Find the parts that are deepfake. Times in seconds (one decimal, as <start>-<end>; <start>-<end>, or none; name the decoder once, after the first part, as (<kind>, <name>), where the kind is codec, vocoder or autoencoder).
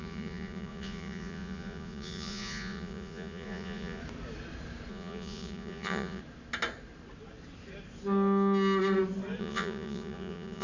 0.0-4.0 (vocoder, Vocos); 4.9-6.2; 9.4-10.6